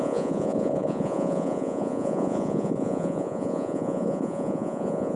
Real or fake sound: fake